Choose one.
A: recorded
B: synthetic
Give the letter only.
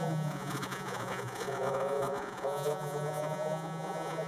B